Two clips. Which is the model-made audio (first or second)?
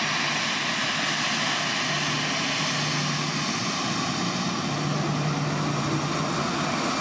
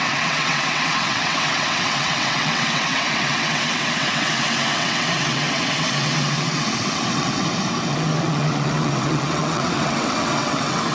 second